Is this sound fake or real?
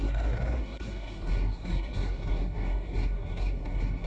fake